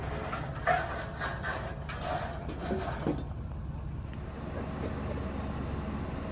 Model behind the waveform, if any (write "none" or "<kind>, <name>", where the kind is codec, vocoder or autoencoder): none